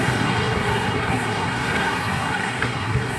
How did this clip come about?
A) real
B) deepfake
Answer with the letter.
B